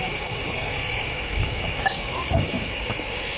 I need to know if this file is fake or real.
fake